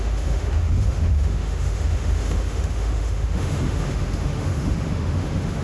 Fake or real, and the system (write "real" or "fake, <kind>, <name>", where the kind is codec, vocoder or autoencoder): fake, autoencoder, DAC-VAE